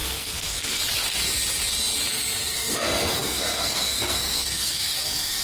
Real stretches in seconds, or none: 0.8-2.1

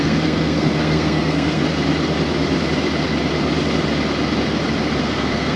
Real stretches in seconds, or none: 1.6-5.0